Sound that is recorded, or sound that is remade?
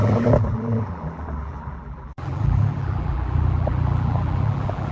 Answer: remade